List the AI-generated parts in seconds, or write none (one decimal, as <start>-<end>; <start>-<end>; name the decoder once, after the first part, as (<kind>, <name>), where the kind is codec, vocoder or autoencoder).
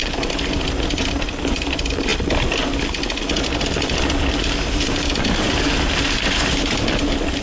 none